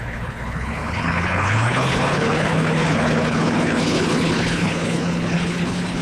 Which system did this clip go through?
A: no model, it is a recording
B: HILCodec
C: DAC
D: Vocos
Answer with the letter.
B